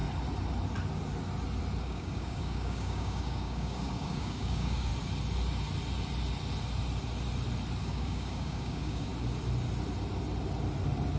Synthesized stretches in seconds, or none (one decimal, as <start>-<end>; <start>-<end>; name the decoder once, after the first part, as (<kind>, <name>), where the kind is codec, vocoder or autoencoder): 1.8-4.9 (codec, DAC); 7.8-9.1